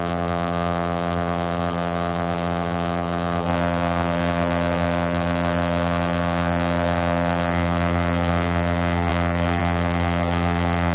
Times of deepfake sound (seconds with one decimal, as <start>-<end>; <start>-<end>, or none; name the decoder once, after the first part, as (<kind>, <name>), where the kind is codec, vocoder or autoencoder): 0.0-10.9 (vocoder, BigVGAN v2)